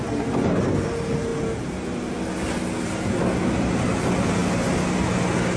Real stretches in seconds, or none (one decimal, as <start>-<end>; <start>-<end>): 0.0-5.6